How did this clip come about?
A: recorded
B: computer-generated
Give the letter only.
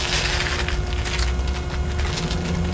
A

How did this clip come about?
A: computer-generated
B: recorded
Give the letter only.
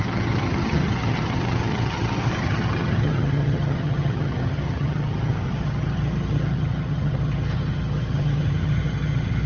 A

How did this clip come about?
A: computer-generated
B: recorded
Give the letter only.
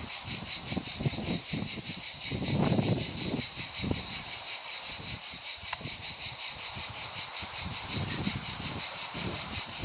A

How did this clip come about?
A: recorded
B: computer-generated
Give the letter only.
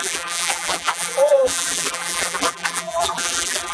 B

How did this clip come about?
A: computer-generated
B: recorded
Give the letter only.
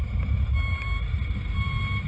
A